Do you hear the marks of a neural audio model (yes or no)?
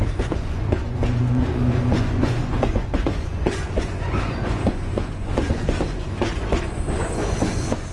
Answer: yes